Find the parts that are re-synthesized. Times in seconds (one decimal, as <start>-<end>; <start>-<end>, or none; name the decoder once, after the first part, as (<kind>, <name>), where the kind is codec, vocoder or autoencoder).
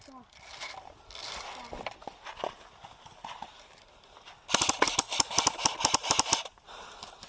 2.0-3.7 (vocoder, BigVGAN v2); 6.0-7.3